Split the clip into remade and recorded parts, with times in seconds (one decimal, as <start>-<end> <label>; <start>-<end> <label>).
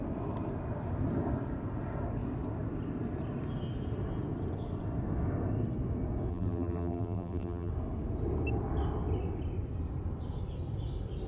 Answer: 0.0-6.3 recorded; 6.3-7.7 remade; 7.7-11.3 recorded